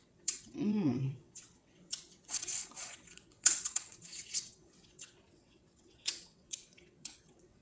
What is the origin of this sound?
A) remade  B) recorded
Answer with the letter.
A